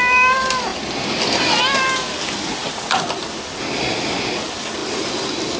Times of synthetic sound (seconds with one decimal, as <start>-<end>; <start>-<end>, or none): none